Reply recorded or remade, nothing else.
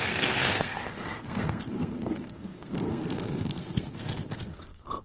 remade